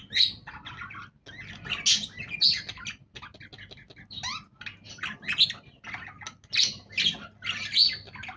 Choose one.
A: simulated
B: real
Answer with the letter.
B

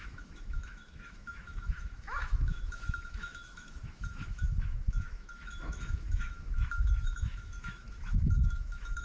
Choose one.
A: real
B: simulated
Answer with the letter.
B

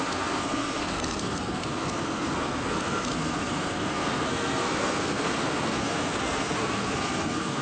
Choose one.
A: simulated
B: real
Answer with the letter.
A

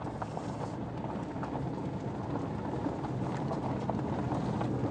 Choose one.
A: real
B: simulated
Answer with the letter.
A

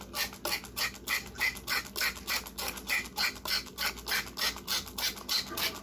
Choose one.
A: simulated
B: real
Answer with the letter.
B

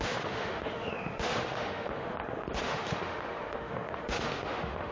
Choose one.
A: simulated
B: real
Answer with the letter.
A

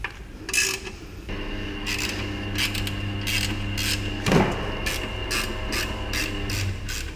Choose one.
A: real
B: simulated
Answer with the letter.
A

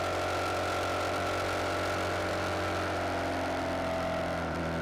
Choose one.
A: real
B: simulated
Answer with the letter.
A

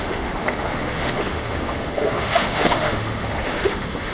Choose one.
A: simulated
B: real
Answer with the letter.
A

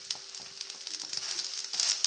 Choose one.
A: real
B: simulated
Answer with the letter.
A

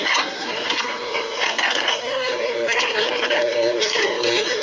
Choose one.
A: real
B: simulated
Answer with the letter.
B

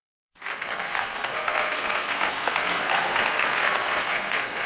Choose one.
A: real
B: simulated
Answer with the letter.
B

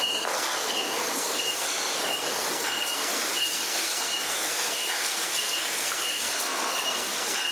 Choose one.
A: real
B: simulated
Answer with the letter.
B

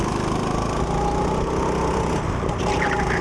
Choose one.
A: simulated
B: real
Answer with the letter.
B